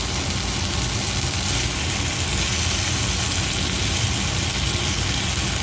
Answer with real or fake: real